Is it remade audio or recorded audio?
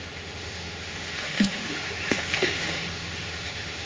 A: remade